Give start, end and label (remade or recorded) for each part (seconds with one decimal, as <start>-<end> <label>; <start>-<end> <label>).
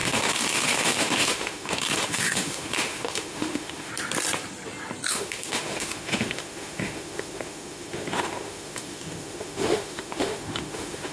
0.0-3.9 remade; 3.9-5.1 recorded; 5.1-11.1 remade